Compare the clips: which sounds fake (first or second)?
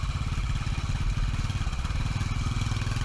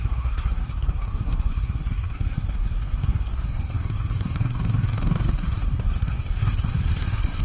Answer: second